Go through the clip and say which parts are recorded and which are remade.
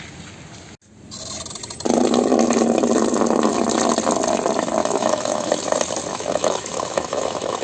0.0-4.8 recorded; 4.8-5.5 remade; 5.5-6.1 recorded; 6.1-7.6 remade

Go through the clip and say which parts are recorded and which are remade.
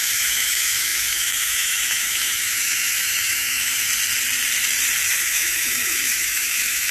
0.0-3.9 remade; 3.9-5.2 recorded; 5.2-6.9 remade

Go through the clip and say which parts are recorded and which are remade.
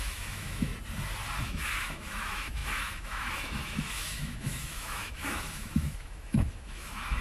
0.0-0.7 remade; 0.7-1.4 recorded; 1.4-7.2 remade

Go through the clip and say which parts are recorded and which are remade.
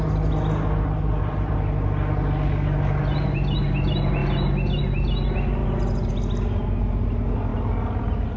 0.0-8.4 recorded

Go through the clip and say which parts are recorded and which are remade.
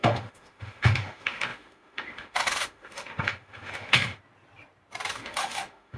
0.0-4.2 remade; 4.2-5.1 recorded; 5.1-6.0 remade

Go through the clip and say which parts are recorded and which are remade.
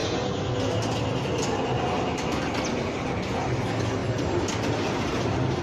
0.0-5.6 recorded